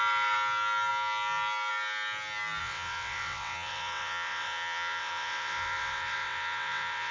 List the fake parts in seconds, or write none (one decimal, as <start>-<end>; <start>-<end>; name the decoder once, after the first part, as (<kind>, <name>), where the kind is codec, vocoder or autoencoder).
2.6-7.1 (vocoder, WaveNeXt)